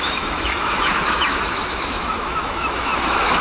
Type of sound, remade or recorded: remade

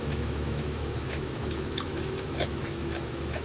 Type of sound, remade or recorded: remade